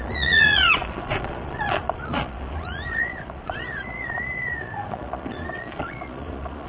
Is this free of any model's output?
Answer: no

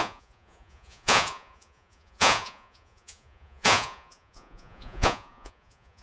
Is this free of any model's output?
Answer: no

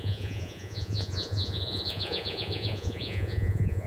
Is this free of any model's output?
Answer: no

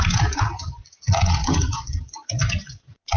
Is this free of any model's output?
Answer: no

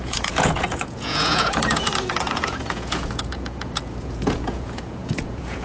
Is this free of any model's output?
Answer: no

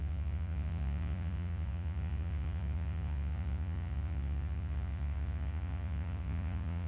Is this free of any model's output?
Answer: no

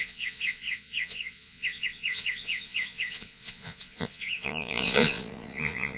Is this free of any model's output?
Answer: no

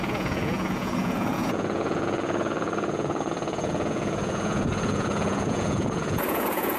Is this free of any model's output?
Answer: no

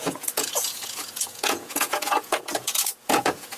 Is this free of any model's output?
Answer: no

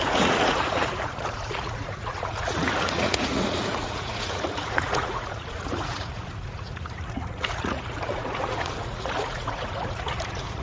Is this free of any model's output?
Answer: no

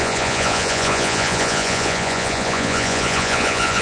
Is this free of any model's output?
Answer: no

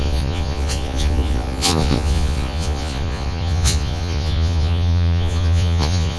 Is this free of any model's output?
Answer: no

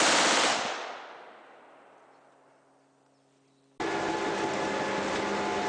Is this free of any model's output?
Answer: yes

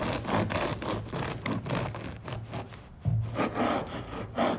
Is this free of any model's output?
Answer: yes